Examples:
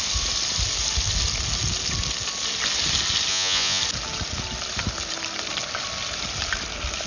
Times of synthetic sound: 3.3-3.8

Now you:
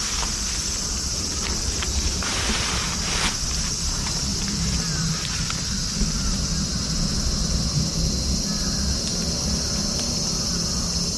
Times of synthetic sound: 1.1-3.7; 4.3-5.5